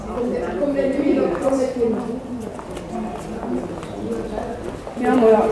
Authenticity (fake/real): real